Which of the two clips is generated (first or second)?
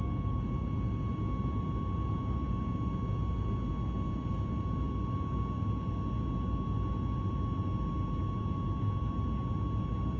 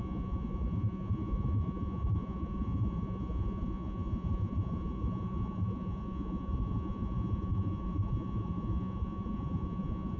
second